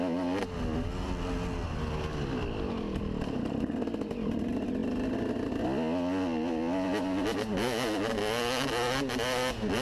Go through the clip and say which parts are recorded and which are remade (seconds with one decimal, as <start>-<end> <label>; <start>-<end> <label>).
0.0-9.8 recorded